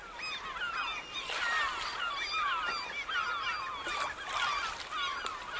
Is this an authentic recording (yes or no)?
yes